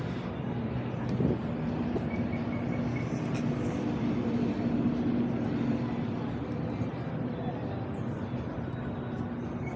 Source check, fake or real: real